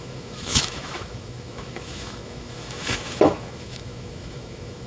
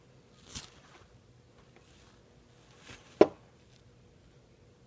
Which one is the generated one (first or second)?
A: first